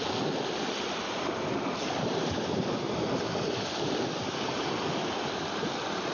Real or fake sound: real